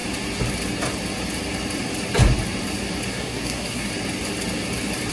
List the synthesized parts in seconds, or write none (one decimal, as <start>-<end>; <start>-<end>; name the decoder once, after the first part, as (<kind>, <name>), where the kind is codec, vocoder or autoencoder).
3.1-3.9 (codec, SNAC)